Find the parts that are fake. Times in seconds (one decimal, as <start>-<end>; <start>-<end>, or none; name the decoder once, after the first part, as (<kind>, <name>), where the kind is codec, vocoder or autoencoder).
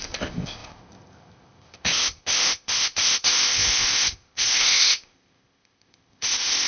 0.0-6.7 (codec, ZipCodec)